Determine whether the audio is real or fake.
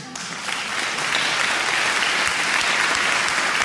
real